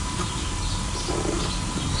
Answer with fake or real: real